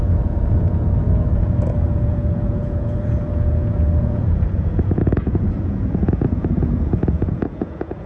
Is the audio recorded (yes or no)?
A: no